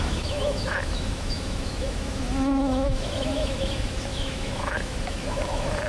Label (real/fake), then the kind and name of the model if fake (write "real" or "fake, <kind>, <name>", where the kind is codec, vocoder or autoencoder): fake, autoencoder, DAC-VAE